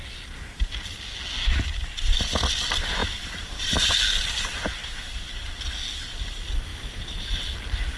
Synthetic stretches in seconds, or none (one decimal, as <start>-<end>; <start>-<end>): 3.0-3.9; 4.8-5.5; 6.7-7.5